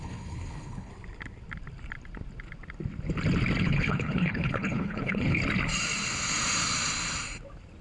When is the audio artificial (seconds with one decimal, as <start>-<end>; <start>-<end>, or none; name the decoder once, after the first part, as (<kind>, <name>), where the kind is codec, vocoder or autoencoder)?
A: 0.0-0.9 (codec, HILCodec); 3.6-5.4